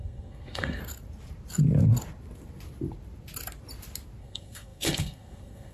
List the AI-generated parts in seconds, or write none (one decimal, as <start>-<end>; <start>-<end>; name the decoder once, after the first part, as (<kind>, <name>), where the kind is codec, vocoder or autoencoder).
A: 0.0-0.8 (codec, SNAC); 4.2-5.7